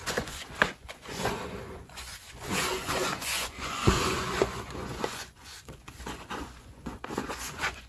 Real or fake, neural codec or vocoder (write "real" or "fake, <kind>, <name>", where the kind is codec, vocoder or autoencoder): fake, vocoder, Vocos